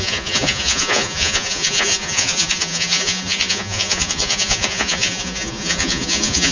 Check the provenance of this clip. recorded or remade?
remade